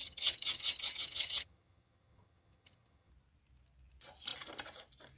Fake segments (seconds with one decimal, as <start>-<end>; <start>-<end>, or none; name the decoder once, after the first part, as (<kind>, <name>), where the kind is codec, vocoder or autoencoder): 0.0-3.1 (vocoder, HiFi-GAN)